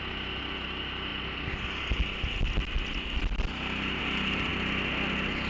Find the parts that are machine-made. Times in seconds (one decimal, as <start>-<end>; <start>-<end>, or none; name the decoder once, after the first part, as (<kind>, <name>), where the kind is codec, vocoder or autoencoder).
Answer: none